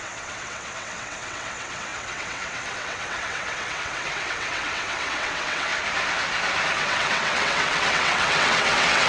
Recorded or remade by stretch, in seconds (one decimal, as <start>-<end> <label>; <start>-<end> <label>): 0.0-5.7 remade; 5.7-6.7 recorded; 6.7-9.1 remade